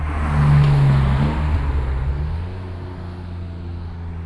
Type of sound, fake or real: real